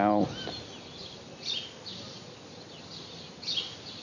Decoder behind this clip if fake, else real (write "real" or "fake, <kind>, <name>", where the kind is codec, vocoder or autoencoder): real